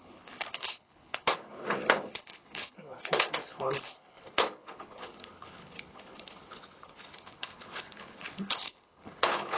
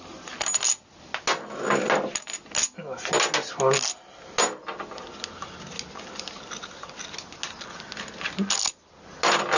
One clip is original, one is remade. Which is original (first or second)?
second